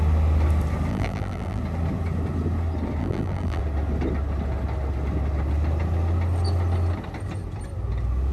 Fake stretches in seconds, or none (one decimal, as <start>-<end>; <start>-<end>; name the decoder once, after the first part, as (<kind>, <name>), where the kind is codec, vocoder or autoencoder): 0.9-1.6 (vocoder, BigVGAN v2); 3.0-3.6